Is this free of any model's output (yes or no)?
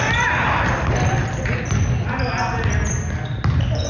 yes